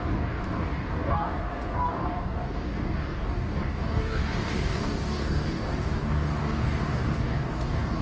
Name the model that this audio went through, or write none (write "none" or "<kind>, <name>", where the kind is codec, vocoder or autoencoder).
codec, DAC